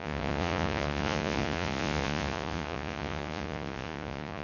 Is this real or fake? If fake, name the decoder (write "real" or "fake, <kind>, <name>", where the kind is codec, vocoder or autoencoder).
fake, vocoder, Vocos